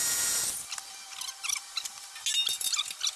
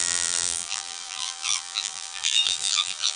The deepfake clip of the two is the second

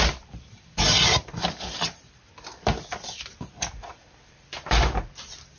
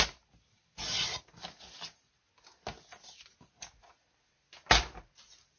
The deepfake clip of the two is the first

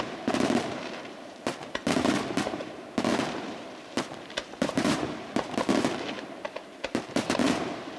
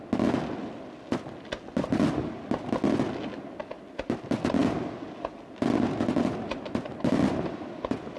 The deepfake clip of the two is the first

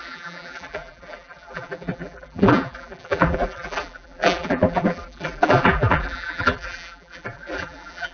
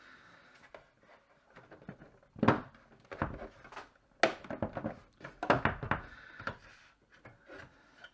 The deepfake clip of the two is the first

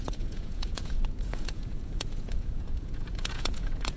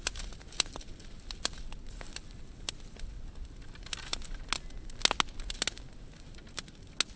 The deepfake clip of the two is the first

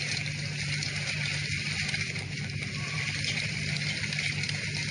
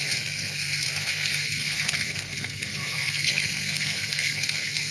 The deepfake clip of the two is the second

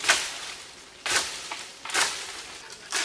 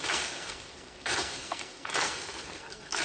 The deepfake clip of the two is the second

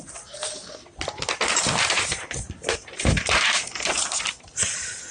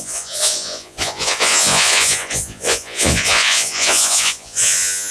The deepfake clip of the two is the second